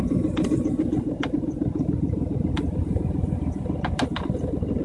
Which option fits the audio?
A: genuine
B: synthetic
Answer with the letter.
A